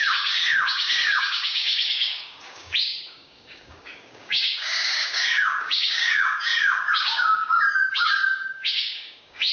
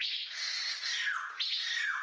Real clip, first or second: second